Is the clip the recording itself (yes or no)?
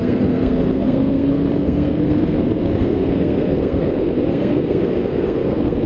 no